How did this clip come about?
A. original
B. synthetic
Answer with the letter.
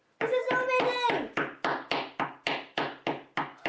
A